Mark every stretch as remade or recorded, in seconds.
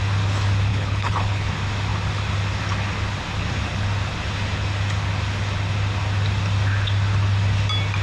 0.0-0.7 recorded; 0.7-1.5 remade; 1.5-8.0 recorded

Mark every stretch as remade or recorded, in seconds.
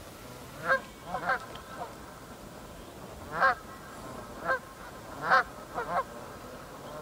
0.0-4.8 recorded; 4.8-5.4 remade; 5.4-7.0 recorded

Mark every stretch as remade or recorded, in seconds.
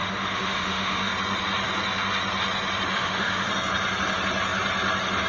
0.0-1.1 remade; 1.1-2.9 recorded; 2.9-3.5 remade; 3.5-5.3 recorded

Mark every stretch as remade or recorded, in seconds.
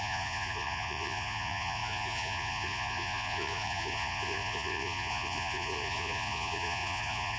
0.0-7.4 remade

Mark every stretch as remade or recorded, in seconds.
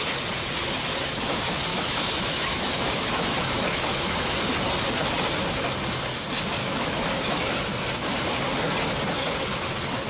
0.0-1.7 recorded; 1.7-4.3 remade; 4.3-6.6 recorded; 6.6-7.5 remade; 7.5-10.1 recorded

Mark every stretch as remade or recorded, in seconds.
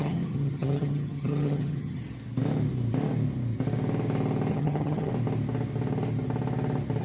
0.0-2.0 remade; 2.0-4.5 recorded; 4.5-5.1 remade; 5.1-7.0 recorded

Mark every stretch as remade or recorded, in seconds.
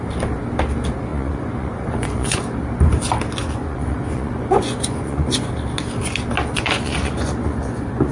0.0-1.1 recorded; 1.1-2.4 remade; 2.4-3.4 recorded; 3.4-5.5 remade; 5.5-6.5 recorded; 6.5-8.1 remade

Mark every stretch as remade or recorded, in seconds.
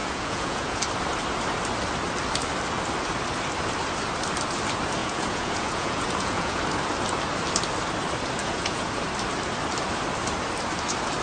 0.0-0.8 remade; 0.8-5.0 recorded; 5.0-6.6 remade; 6.6-8.4 recorded; 8.4-8.9 remade; 8.9-11.2 recorded